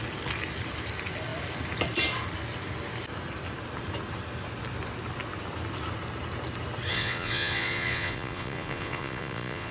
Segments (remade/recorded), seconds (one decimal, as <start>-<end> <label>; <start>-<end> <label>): 0.0-6.9 recorded; 6.9-9.7 remade